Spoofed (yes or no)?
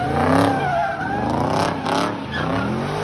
no